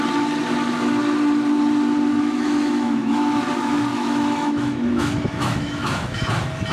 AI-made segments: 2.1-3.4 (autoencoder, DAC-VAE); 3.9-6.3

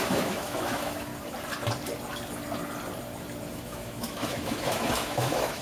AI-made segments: 0.0-1.1 (autoencoder, DAC-VAE); 3.5-5.6

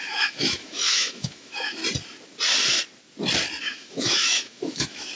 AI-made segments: 0.0-1.8 (autoencoder, DAC-VAE); 3.6-5.2

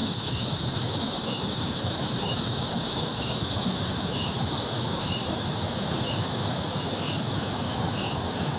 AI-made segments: 0.0-8.6 (autoencoder, DAC-VAE)

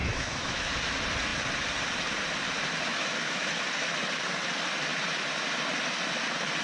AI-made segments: 0.0-0.7 (autoencoder, DAC-VAE); 2.9-3.5

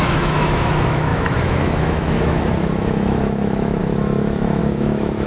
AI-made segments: 0.0-5.3 (autoencoder, DAC-VAE)